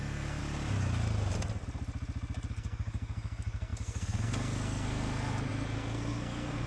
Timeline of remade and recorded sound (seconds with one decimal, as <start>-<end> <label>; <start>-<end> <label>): 0.0-0.4 remade; 0.4-2.5 recorded; 2.5-6.7 remade